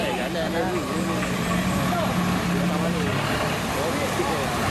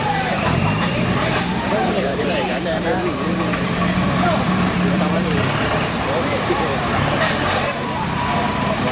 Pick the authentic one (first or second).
first